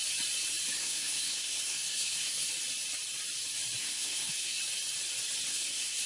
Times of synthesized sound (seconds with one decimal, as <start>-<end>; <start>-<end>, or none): 0.8-2.5; 3.8-4.6; 5.5-6.1